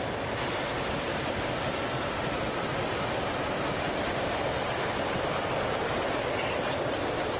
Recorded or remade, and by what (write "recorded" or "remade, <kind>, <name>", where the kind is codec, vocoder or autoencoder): recorded